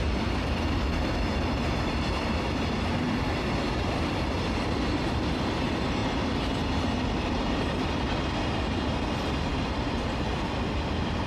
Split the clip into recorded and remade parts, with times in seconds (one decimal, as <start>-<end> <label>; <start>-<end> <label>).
0.0-9.5 recorded; 9.5-10.5 remade; 10.5-11.3 recorded